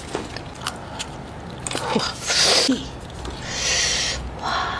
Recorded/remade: recorded